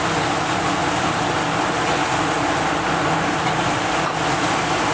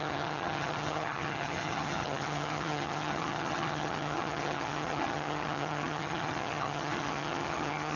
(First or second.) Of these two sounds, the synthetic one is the second